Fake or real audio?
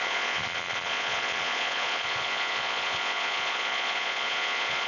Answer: fake